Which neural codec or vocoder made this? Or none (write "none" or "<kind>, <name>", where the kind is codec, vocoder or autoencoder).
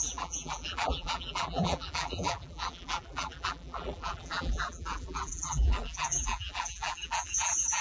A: vocoder, BigVGAN v2